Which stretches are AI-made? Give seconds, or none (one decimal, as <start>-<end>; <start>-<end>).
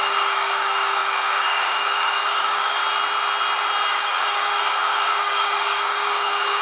0.0-2.8; 3.9-6.6